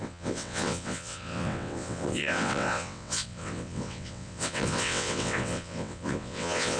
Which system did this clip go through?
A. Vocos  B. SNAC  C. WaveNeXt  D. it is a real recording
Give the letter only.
C